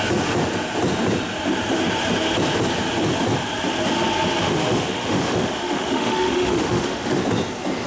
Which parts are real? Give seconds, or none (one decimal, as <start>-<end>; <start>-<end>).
0.0-4.4; 7.2-7.9